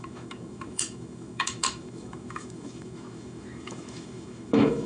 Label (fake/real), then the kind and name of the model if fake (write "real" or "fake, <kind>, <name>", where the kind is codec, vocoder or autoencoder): fake, autoencoder, DAC-VAE